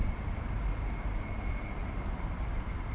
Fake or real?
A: real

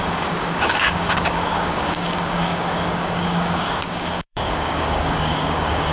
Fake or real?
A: fake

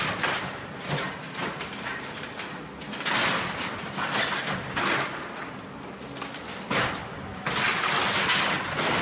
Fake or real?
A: real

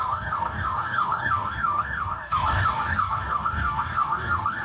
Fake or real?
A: fake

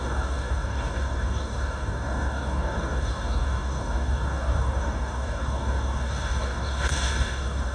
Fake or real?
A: fake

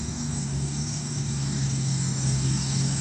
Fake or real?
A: fake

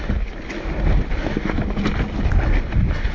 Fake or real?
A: real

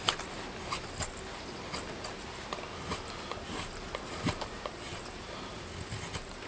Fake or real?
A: real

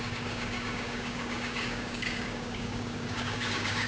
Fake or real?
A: fake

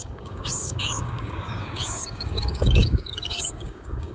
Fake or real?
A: fake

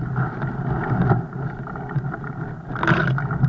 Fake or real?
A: real